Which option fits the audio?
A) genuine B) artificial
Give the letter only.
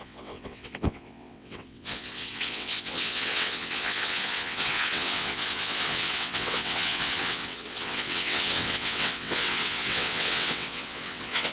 B